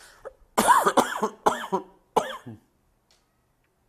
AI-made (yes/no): no